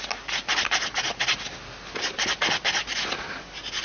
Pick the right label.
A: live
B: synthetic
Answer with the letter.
A